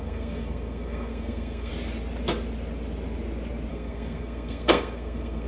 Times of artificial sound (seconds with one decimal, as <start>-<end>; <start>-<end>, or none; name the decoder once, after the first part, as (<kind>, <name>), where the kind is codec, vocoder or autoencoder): 0.0-1.7 (codec, SNAC); 3.7-5.5